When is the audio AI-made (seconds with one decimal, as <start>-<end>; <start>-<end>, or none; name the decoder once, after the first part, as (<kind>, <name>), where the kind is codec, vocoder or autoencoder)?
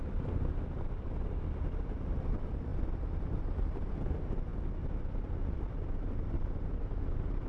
0.0-2.7 (vocoder, BigVGAN v2); 3.4-4.5; 5.6-7.5